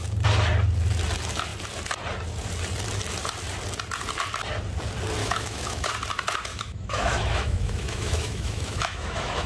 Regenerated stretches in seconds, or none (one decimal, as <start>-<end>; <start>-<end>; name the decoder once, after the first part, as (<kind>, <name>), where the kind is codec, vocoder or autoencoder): 5.2-5.9 (autoencoder, DAC-VAE); 6.5-9.5